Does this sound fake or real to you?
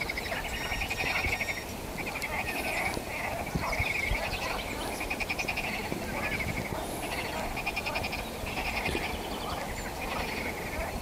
real